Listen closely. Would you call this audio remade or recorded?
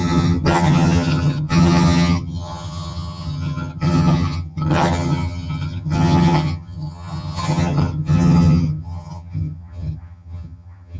remade